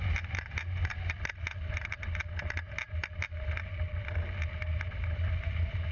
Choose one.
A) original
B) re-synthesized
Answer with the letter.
A